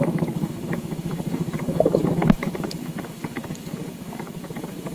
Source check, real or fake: fake